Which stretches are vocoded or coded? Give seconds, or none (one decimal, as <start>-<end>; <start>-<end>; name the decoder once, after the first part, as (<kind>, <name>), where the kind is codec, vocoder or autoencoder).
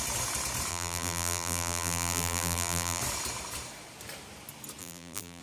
0.7-3.0 (vocoder, BigVGAN v2); 4.8-5.4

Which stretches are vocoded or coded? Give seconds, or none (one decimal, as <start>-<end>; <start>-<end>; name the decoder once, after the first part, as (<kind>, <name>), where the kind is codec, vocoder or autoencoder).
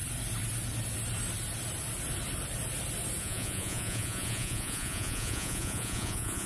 3.2-6.5 (vocoder, Vocos)